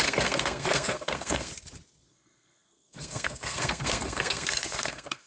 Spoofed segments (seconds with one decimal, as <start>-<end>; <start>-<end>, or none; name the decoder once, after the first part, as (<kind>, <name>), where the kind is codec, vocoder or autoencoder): 0.0-1.5 (codec, SNAC); 2.1-5.3